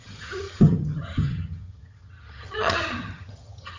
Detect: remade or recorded remade